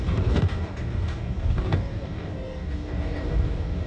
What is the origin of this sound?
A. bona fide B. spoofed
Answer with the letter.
B